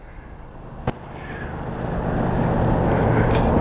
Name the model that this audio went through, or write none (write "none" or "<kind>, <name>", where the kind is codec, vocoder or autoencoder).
none